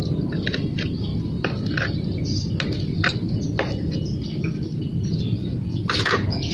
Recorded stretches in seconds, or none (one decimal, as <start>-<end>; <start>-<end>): 0.0-5.4